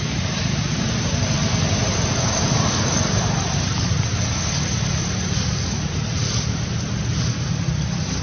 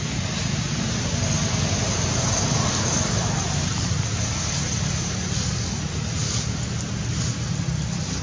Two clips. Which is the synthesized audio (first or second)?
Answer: first